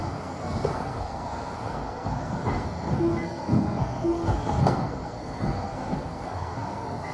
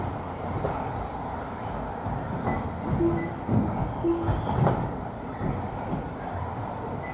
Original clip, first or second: second